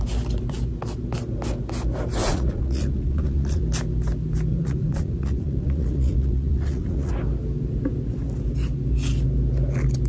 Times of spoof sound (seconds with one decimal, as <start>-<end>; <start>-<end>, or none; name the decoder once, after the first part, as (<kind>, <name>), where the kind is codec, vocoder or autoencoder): 2.2-3.6 (vocoder, Vocos); 4.5-7.1